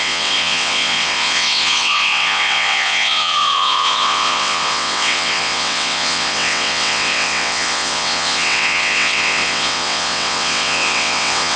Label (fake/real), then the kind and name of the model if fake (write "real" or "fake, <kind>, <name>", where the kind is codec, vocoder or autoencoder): fake, vocoder, WaveNeXt